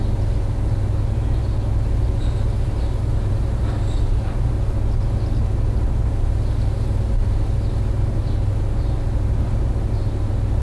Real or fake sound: real